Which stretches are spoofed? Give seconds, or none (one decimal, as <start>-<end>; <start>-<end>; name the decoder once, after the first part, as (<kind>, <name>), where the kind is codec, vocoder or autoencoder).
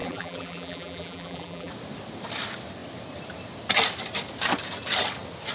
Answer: 0.0-1.7 (vocoder, BigVGAN v2)